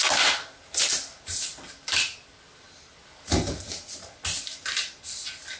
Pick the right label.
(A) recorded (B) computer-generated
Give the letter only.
A